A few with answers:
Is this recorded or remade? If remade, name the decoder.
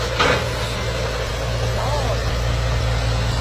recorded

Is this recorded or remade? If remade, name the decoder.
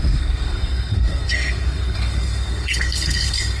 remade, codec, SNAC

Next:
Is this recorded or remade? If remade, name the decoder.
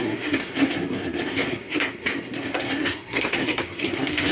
remade, codec, SNAC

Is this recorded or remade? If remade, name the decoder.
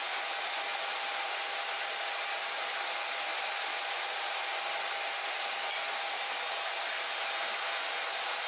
recorded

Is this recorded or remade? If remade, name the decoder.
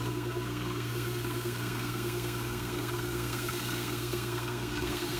remade, codec, SNAC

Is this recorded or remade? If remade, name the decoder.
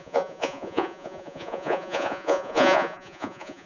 remade, vocoder, Vocos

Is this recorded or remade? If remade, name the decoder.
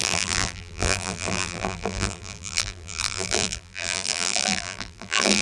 remade, vocoder, BigVGAN v2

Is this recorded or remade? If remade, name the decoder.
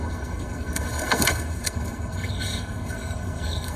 remade, codec, SNAC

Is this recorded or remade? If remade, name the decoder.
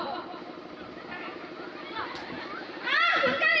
recorded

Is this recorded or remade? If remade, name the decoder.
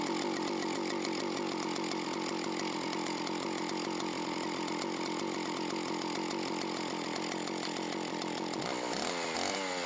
recorded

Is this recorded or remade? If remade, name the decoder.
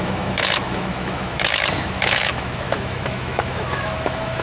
remade, autoencoder, DAC-VAE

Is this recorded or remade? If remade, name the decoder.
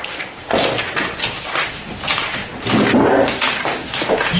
recorded